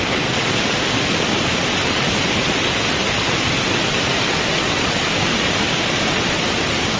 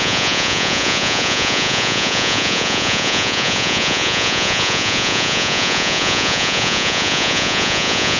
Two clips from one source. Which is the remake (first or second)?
second